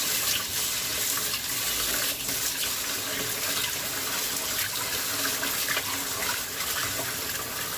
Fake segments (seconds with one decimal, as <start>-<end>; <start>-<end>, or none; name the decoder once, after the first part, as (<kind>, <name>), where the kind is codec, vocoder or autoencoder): none